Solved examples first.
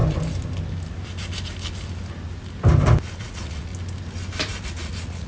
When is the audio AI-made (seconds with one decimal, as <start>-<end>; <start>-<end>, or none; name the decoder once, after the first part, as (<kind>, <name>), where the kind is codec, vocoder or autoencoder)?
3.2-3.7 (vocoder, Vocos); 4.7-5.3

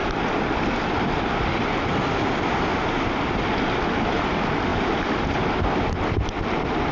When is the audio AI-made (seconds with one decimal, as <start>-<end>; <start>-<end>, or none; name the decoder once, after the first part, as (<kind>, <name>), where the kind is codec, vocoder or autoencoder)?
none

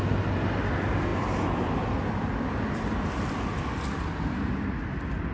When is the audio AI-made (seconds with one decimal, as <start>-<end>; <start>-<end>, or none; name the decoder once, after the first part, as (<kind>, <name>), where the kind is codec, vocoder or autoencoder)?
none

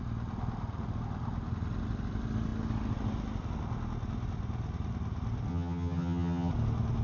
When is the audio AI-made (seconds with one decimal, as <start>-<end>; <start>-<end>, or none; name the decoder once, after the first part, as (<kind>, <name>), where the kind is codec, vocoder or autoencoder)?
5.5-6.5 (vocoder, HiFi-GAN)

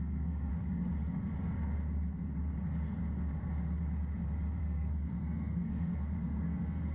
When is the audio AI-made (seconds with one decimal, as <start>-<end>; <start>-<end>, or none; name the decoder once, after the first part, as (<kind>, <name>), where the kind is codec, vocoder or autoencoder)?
0.0-0.5 (codec, SNAC); 4.6-6.9

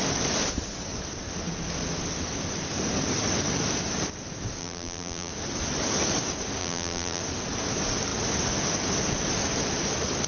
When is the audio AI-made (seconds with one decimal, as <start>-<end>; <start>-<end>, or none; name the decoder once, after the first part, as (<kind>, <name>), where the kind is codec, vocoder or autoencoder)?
4.6-5.3 (vocoder, BigVGAN v2); 6.6-7.2

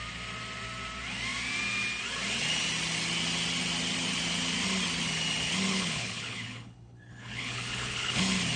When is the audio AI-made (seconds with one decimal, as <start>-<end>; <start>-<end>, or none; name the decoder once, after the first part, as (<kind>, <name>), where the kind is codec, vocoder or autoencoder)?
5.7-8.2 (codec, HILCodec)

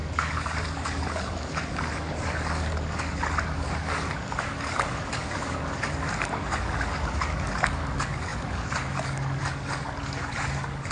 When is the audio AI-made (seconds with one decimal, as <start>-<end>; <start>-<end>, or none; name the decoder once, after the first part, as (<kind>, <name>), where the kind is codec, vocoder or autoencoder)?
0.0-10.9 (codec, DAC)